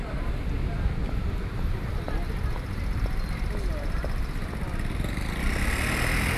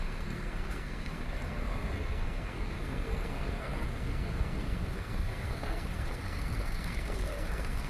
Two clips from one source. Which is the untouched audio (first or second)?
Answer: first